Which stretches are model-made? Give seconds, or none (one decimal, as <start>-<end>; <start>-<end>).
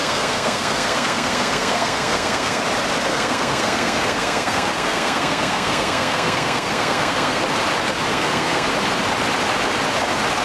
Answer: 0.0-2.6; 3.1-7.4; 8.1-8.7